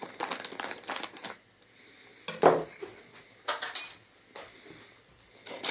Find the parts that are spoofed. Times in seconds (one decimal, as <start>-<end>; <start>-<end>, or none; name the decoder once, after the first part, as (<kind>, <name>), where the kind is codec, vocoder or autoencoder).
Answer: none